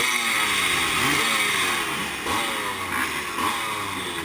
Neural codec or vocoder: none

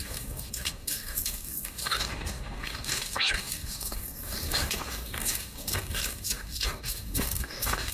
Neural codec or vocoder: codec, DAC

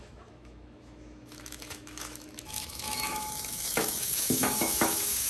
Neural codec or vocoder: autoencoder, DAC-VAE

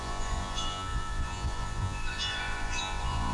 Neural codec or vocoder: vocoder, Vocos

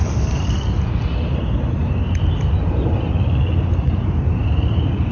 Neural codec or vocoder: none